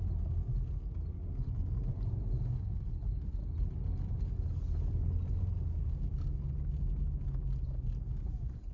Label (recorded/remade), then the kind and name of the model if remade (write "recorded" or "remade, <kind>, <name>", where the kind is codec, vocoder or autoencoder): recorded